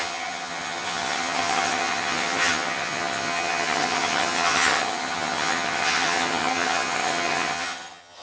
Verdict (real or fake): fake